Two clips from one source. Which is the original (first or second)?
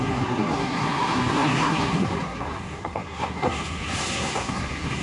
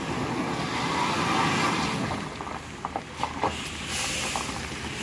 second